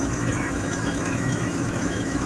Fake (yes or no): yes